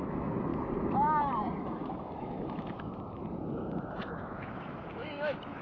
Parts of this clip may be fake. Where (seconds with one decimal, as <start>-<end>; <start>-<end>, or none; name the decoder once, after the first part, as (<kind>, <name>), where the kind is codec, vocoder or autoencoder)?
0.0-0.5 (autoencoder, DAC-VAE); 1.6-2.9; 4.2-5.6